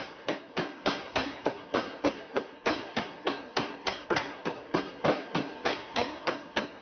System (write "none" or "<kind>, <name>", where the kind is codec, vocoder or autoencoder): codec, SNAC